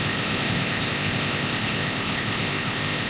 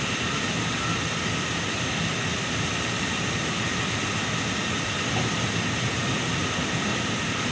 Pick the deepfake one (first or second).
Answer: first